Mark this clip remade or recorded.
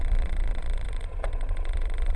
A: remade